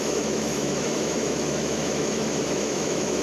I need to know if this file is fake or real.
fake